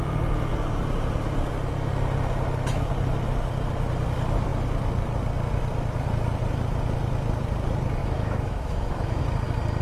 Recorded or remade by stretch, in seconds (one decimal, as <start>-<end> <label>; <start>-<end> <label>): 0.0-8.0 recorded; 8.0-9.2 remade; 9.2-9.8 recorded